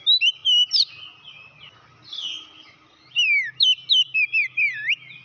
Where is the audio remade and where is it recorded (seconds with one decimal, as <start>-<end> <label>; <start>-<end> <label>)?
0.0-5.2 recorded

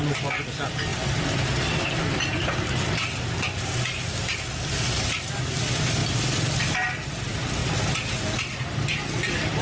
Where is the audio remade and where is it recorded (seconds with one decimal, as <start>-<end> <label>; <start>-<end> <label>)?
0.0-9.6 recorded